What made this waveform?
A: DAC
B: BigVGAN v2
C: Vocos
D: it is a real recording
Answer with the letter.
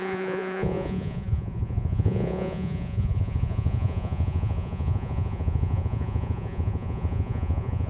C